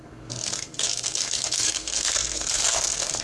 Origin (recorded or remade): remade